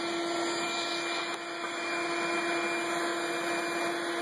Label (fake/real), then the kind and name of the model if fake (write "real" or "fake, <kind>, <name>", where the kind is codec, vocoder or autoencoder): real